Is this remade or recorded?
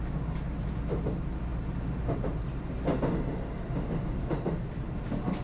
recorded